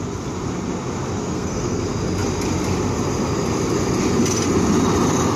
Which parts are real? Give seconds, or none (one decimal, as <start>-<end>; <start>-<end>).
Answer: 0.0-1.2; 1.8-5.4